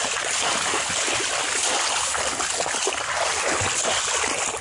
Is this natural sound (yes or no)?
yes